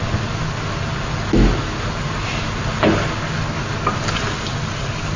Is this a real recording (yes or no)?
yes